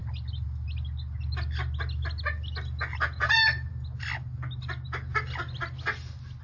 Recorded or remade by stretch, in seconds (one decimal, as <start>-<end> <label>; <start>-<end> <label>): 0.0-6.4 recorded